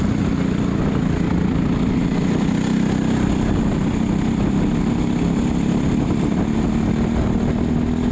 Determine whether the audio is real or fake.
real